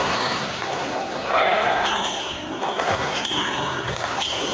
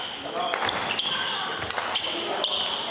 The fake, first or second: first